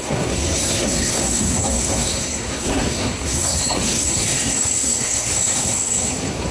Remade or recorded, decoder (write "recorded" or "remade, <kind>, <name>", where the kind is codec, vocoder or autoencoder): remade, codec, SNAC